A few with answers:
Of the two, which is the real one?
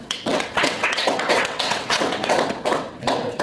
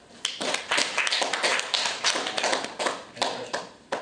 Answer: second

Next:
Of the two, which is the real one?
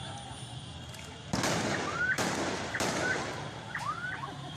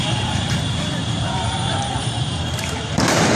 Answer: first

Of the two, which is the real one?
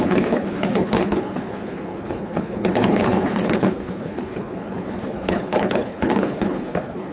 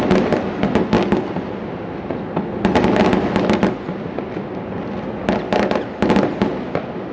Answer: second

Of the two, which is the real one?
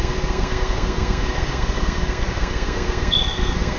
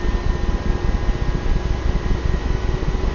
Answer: second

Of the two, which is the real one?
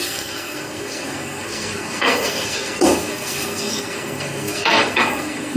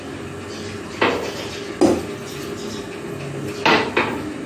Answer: second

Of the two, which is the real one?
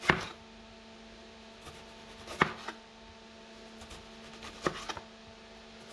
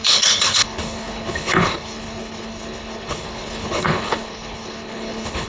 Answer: first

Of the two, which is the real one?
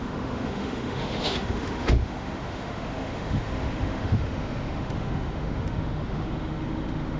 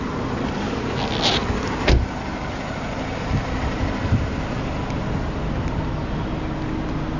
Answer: second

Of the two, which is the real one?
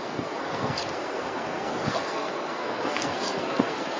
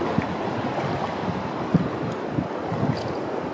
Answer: second